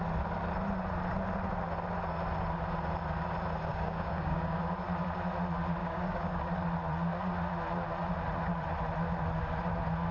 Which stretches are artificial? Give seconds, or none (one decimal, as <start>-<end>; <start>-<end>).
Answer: 3.7-4.6; 5.8-6.4